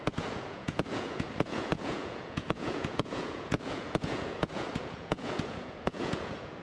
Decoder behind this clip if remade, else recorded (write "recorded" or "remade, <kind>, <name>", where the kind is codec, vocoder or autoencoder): remade, vocoder, Vocos